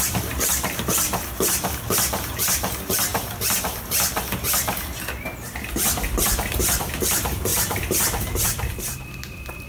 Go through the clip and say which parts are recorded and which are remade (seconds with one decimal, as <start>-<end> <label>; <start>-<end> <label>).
0.0-3.1 remade; 3.1-3.6 recorded; 3.6-4.1 remade; 4.1-6.8 recorded; 6.8-9.7 remade